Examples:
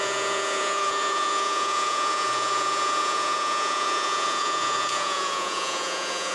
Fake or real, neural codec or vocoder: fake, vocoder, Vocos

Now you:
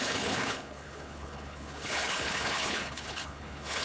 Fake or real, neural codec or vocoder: fake, codec, HILCodec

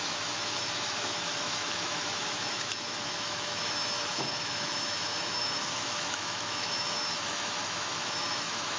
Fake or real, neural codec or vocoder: fake, autoencoder, DAC-VAE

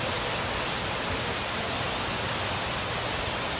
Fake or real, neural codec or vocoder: real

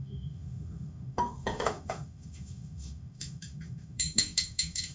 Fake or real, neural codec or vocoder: fake, autoencoder, DAC-VAE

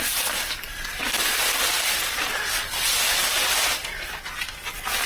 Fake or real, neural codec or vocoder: real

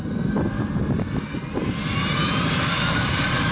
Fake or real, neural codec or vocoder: real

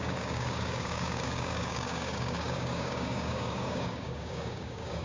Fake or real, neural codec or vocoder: fake, codec, DAC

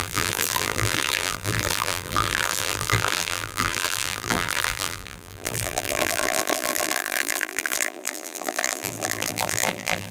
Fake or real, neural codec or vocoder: fake, vocoder, BigVGAN v2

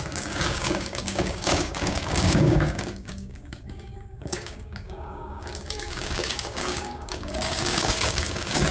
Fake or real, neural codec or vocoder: fake, codec, DAC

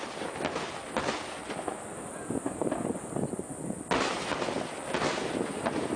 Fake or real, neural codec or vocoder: real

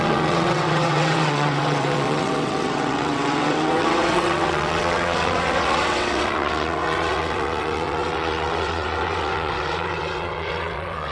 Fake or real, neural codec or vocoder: fake, vocoder, WaveNeXt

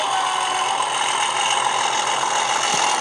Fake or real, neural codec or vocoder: real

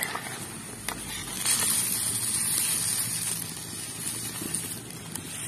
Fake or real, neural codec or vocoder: real